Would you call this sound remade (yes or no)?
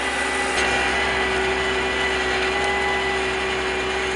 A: no